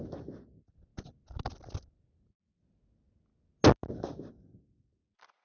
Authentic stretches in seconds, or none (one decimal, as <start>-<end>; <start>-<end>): 0.0-5.4